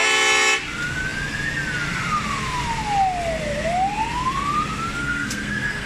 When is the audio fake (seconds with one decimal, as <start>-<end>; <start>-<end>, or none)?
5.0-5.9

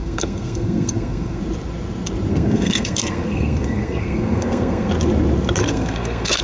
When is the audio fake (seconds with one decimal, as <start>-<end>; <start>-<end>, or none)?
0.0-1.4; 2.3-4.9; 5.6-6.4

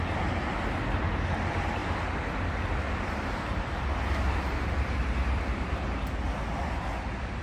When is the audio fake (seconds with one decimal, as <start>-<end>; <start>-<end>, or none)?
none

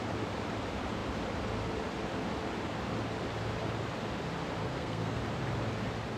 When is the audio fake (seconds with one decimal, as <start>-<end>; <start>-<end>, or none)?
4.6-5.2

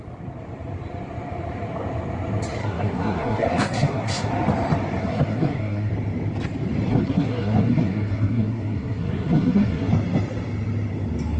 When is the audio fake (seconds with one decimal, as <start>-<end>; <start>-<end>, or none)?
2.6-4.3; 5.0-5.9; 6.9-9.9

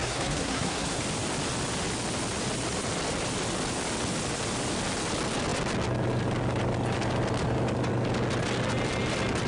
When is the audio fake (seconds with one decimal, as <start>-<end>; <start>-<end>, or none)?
0.0-1.0

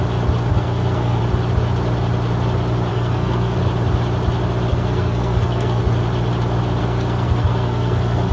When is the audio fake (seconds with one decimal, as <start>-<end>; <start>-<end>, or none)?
0.5-1.2; 2.9-3.6; 4.7-5.8; 6.8-8.3